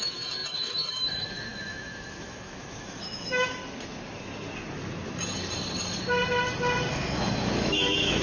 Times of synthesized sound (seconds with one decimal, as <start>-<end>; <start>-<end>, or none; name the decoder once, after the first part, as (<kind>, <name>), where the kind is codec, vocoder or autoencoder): 0.0-3.6 (autoencoder, DAC-VAE); 6.9-8.2